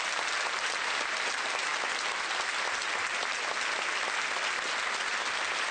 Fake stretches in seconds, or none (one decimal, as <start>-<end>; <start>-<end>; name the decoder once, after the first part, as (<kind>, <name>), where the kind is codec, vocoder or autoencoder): none